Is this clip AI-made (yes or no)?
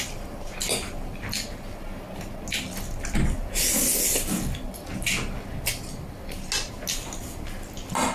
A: no